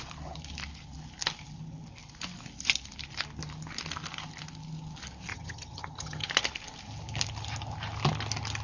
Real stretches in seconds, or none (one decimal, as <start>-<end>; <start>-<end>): 0.0-5.3; 6.3-8.6